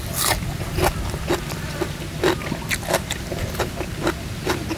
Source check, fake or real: real